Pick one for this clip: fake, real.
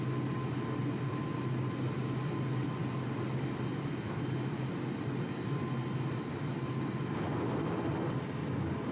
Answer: real